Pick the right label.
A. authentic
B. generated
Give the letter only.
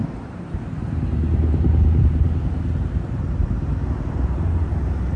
A